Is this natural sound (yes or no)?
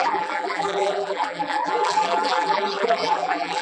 no